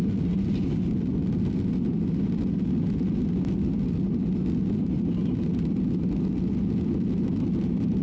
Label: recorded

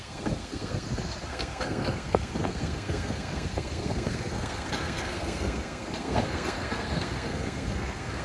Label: remade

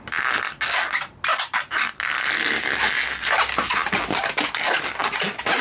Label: recorded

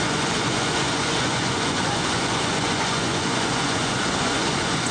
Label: remade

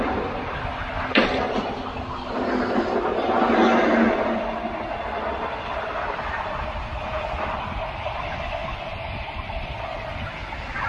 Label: recorded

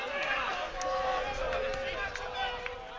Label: recorded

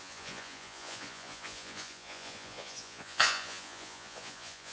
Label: remade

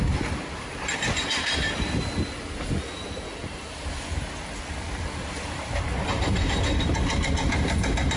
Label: recorded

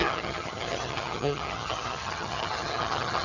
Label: remade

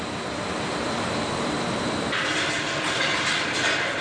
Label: remade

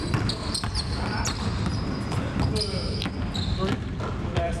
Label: recorded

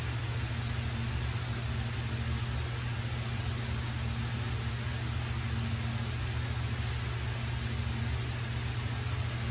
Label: recorded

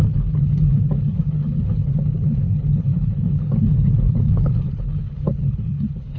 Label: remade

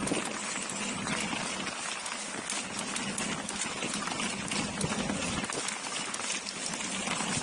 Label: recorded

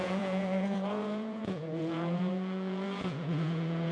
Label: remade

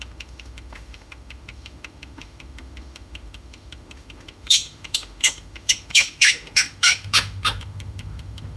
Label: remade